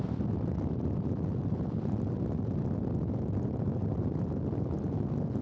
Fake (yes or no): no